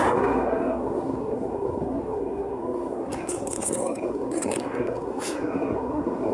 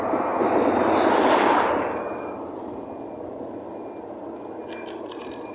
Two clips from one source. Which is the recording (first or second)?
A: second